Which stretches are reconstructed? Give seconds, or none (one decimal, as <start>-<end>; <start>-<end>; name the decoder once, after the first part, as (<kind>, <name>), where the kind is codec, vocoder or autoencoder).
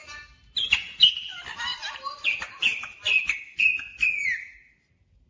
none